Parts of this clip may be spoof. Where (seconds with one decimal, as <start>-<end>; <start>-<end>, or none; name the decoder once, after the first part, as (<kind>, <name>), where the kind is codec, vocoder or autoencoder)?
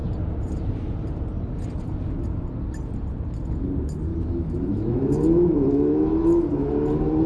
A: 4.1-6.7 (autoencoder, DAC-VAE)